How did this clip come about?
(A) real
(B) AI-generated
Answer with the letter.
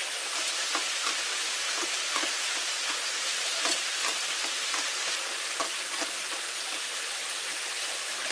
A